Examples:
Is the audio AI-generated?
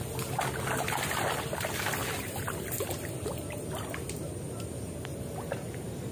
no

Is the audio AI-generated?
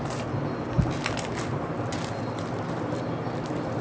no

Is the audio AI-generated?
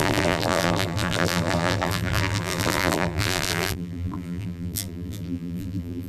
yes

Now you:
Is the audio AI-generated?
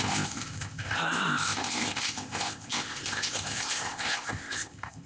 yes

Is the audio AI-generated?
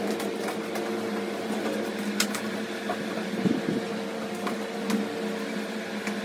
no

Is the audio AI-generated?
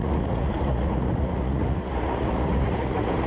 yes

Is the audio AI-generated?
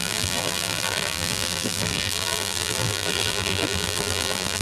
yes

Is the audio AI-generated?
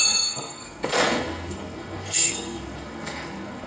yes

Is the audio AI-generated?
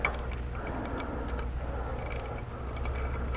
no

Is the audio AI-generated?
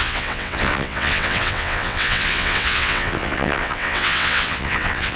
yes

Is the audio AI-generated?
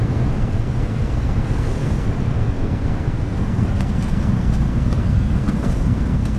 yes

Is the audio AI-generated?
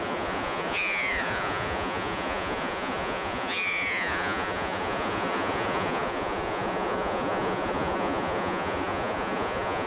yes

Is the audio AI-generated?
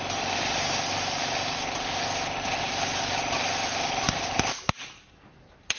no